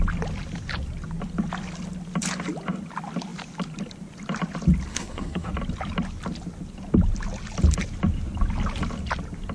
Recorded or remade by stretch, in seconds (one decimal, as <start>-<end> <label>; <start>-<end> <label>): 0.0-4.9 recorded; 4.9-5.5 remade; 5.5-9.5 recorded